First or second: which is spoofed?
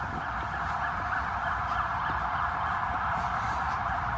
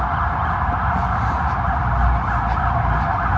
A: first